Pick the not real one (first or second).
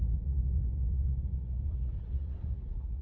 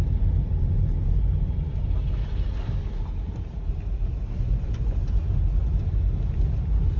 first